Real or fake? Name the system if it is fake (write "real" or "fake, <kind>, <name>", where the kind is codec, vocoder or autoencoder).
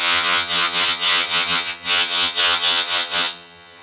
fake, vocoder, HiFi-GAN